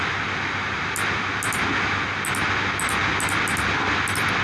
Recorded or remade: recorded